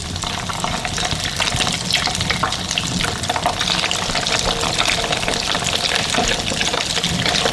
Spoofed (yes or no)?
no